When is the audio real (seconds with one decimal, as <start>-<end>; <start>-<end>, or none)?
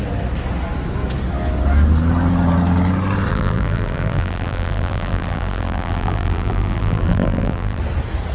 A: 0.0-3.3; 7.8-8.3